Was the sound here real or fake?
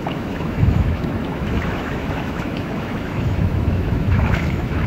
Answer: fake